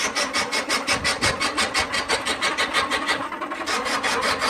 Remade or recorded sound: recorded